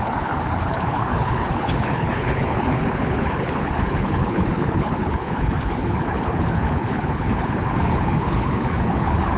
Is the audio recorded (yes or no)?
no